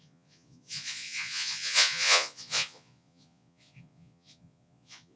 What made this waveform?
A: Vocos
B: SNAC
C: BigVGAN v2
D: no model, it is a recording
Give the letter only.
A